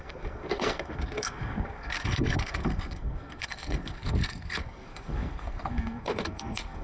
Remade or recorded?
remade